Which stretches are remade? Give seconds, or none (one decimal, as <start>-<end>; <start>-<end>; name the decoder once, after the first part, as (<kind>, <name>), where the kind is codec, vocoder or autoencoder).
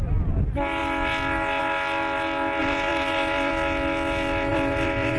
2.6-3.5 (vocoder, BigVGAN v2); 4.5-5.2